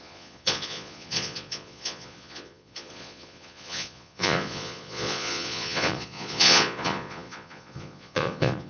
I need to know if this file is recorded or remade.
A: remade